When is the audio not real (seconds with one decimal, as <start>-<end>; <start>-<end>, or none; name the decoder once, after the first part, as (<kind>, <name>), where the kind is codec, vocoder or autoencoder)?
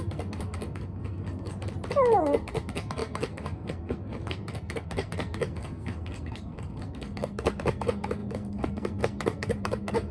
0.0-1.6 (codec, SNAC); 2.2-10.1